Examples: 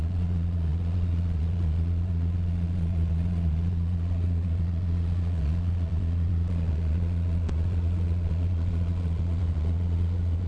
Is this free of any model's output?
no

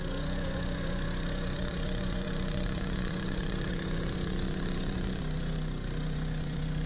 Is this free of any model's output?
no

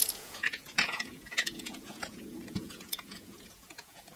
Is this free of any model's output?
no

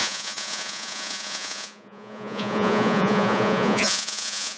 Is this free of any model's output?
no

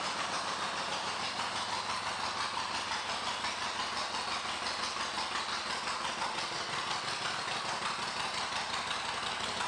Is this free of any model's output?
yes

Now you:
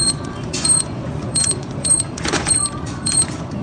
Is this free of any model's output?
no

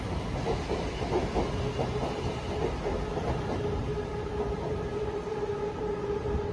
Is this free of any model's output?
yes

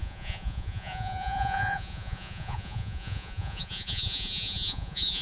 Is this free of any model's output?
no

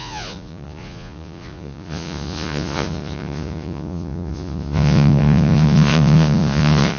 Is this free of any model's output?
no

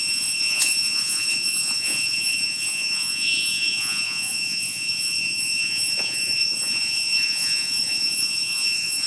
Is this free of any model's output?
no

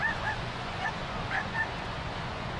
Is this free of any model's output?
no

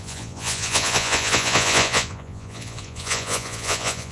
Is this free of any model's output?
no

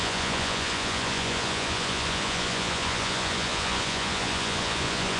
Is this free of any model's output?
no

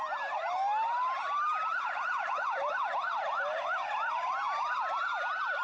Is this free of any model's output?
yes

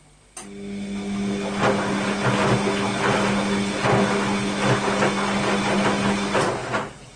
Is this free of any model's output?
yes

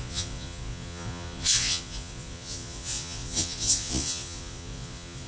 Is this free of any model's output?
no